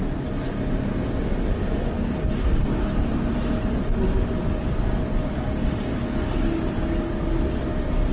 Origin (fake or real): real